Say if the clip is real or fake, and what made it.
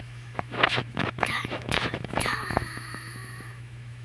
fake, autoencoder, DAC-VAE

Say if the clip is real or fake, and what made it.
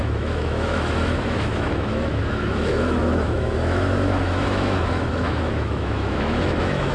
fake, autoencoder, DAC-VAE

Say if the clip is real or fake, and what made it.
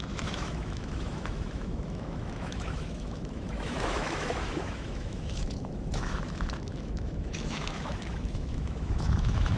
fake, autoencoder, DAC-VAE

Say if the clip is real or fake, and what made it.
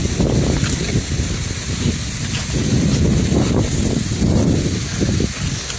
real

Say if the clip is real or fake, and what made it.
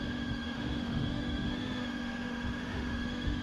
fake, autoencoder, DAC-VAE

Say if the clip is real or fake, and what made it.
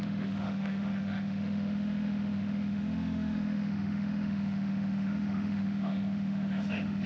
fake, autoencoder, DAC-VAE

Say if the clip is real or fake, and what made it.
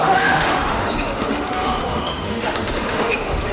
fake, autoencoder, DAC-VAE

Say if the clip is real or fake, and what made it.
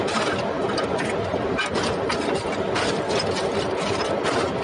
real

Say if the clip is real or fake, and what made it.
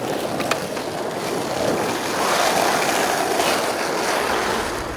real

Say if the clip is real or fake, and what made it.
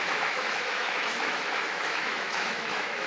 fake, autoencoder, DAC-VAE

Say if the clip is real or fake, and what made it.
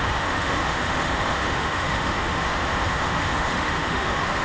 fake, autoencoder, DAC-VAE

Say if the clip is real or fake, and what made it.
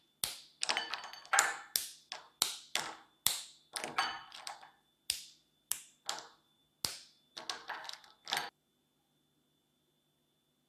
real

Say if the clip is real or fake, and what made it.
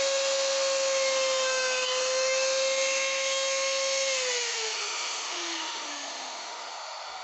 fake, autoencoder, DAC-VAE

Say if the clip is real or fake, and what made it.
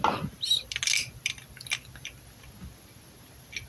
real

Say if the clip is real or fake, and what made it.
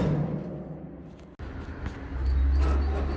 real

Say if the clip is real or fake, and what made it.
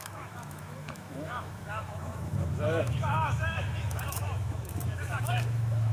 fake, autoencoder, DAC-VAE